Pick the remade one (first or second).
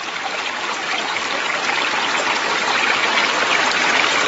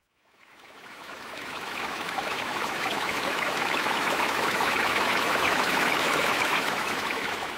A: second